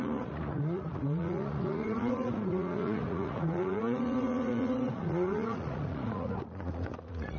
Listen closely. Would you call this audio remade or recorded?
remade